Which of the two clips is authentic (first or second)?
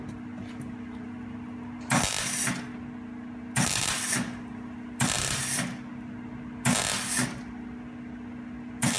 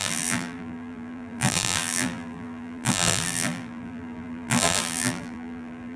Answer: first